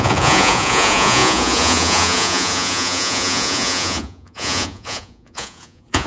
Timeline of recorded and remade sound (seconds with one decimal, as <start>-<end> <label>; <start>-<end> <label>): 0.0-6.1 remade